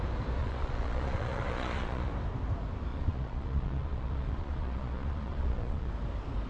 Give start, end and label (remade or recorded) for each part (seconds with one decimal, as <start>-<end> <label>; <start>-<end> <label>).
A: 0.0-0.4 recorded; 0.4-2.1 remade; 2.1-2.9 recorded; 2.9-5.9 remade; 5.9-6.5 recorded